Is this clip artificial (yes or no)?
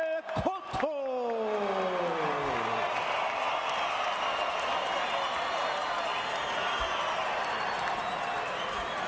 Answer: no